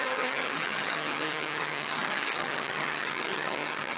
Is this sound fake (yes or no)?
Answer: yes